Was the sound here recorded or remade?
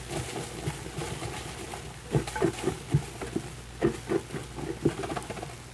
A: recorded